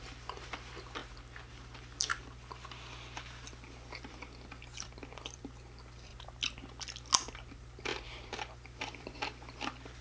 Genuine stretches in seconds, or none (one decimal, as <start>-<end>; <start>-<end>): 1.0-1.5; 6.1-7.5